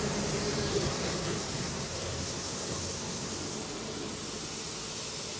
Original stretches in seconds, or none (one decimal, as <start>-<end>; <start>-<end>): 0.0-0.7; 3.3-5.4